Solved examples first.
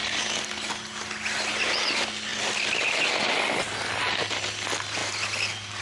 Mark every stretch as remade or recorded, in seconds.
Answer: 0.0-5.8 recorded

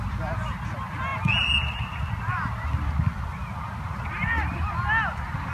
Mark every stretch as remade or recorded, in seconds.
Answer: 0.0-3.4 recorded; 3.4-4.8 remade; 4.8-5.5 recorded